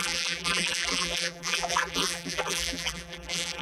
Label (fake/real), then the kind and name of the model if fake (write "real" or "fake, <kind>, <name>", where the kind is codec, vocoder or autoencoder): fake, vocoder, BigVGAN v2